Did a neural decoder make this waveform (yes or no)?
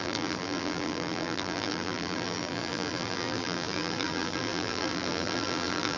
yes